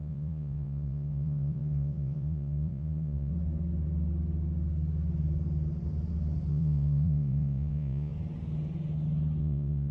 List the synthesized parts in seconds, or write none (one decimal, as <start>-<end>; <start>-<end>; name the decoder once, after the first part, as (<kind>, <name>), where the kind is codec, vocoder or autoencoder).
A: 0.0-3.3 (vocoder, Vocos); 6.5-8.1; 9.4-9.9